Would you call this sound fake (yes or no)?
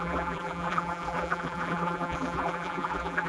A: yes